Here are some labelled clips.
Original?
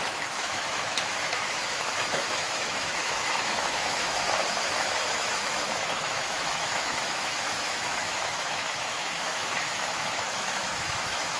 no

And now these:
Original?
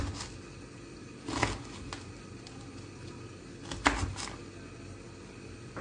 yes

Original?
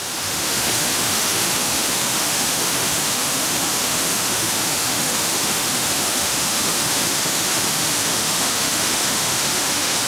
no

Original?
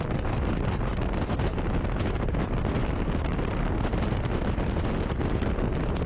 yes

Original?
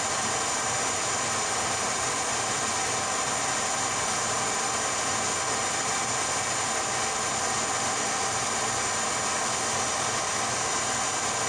yes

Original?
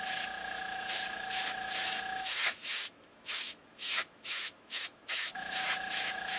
no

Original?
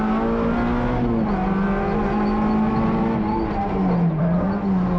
yes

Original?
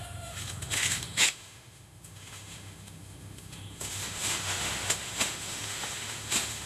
no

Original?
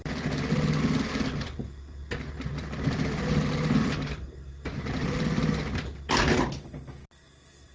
yes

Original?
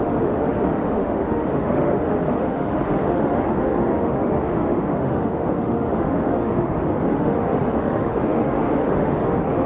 no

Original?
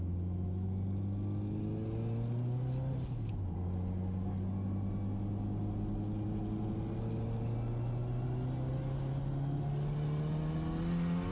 yes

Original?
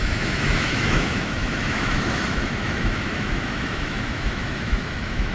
no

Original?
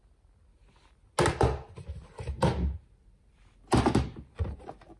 yes